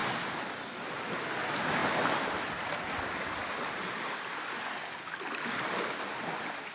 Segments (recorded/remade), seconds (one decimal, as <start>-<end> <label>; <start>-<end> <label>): 0.0-6.7 recorded